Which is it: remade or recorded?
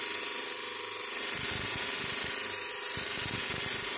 remade